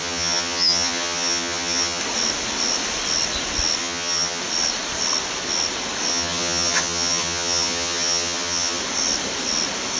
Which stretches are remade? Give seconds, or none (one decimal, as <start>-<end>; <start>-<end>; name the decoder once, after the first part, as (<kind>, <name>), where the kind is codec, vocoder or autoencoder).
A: 0.0-2.0 (vocoder, HiFi-GAN); 3.8-4.4; 6.1-8.8